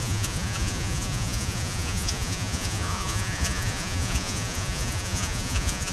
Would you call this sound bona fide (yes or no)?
no